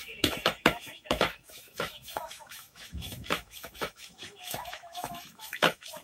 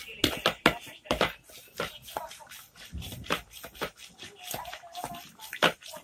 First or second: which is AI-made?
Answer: first